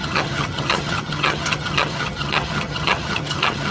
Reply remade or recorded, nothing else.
remade